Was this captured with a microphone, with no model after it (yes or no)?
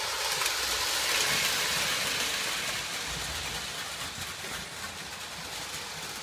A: yes